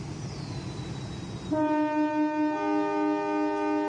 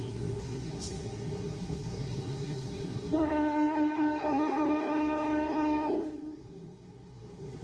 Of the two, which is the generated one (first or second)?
second